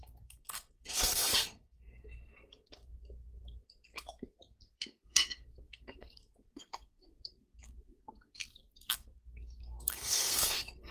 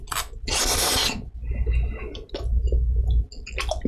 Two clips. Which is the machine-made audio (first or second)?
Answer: first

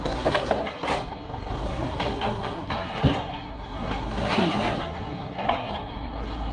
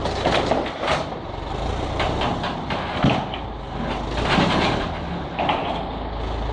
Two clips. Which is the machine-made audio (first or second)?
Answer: first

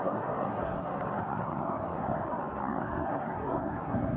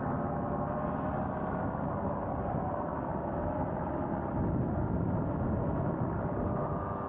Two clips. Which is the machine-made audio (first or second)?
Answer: first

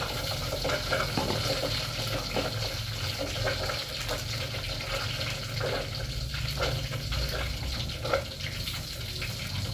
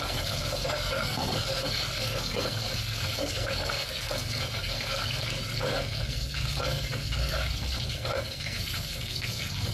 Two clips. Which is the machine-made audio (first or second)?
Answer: second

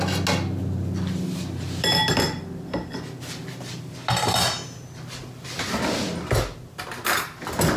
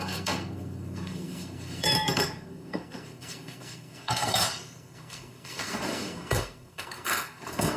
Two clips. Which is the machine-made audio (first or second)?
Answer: second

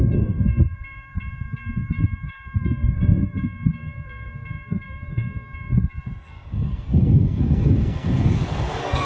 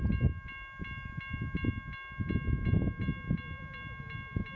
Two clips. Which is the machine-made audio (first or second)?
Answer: first